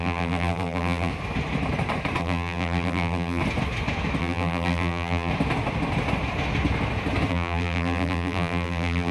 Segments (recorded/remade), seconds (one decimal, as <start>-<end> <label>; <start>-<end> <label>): 0.0-1.1 remade; 1.1-2.2 recorded; 2.2-3.4 remade; 3.4-4.2 recorded; 4.2-5.3 remade; 5.3-7.3 recorded; 7.3-9.1 remade